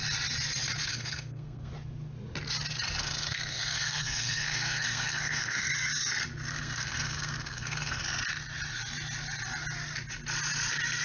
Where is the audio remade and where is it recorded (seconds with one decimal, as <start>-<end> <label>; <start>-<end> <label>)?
0.0-0.9 recorded; 0.9-1.7 remade; 1.7-3.0 recorded; 3.0-5.7 remade; 5.7-6.5 recorded; 6.5-8.0 remade; 8.0-11.0 recorded